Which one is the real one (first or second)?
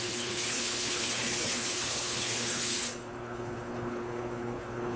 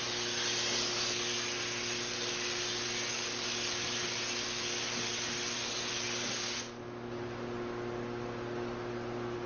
second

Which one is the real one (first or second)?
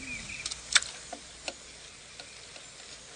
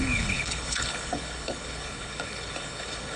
first